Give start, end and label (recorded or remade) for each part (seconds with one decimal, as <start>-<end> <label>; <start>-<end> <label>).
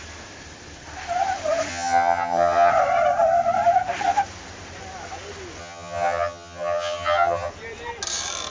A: 0.0-1.7 recorded; 1.7-2.7 remade; 2.7-5.6 recorded; 5.6-7.5 remade; 7.5-8.5 recorded